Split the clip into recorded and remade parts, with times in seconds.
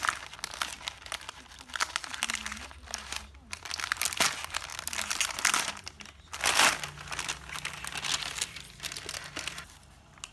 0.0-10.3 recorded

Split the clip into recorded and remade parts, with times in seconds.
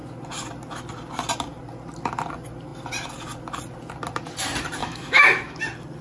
0.0-4.8 recorded; 4.8-5.6 remade; 5.6-6.0 recorded